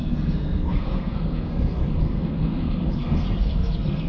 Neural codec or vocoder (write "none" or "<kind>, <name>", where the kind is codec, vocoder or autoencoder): codec, SNAC